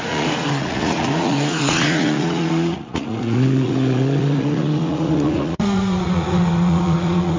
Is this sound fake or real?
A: fake